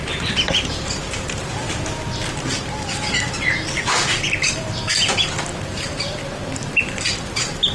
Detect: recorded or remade remade